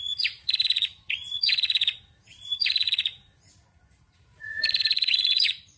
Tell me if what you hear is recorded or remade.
remade